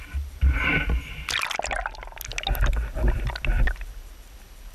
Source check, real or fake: real